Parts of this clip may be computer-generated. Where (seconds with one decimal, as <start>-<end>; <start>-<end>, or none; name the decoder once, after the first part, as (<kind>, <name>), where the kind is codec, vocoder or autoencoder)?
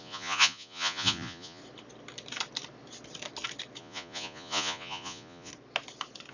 0.0-1.6 (vocoder, Vocos); 3.8-5.5